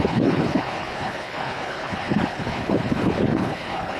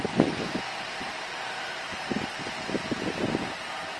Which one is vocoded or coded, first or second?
first